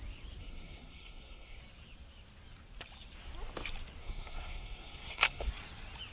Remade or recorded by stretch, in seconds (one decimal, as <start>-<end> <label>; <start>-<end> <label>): 0.0-0.4 recorded; 0.4-1.6 remade; 1.6-4.0 recorded; 4.0-5.5 remade; 5.5-6.1 recorded

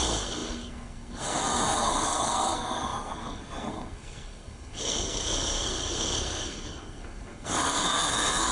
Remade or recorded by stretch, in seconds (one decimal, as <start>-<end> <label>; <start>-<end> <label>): 0.0-8.5 remade

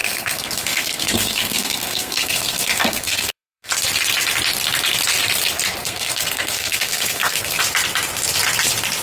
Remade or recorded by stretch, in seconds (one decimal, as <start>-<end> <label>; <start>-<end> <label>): 0.0-3.7 remade; 3.7-5.8 recorded; 5.8-7.6 remade; 7.6-9.0 recorded

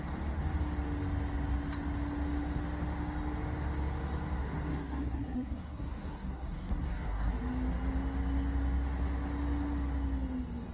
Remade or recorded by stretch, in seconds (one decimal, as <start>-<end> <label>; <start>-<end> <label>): 0.0-4.4 recorded; 4.4-7.3 remade; 7.3-10.7 recorded

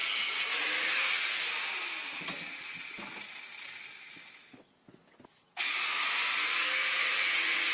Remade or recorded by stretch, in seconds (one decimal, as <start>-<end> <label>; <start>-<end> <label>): 0.0-7.7 recorded

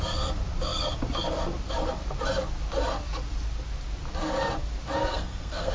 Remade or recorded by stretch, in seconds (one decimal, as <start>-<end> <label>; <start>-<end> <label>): 0.0-5.0 recorded; 5.0-5.7 remade

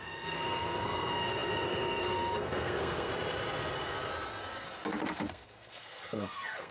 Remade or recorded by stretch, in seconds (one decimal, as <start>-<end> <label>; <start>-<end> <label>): 0.0-3.1 remade; 3.1-5.3 recorded; 5.3-6.7 remade

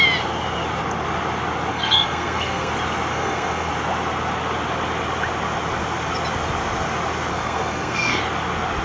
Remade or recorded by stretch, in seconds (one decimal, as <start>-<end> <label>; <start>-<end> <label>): 0.0-1.7 recorded; 1.7-2.7 remade; 2.7-3.1 recorded; 3.1-3.7 remade; 3.7-7.3 recorded; 7.3-8.2 remade; 8.2-8.8 recorded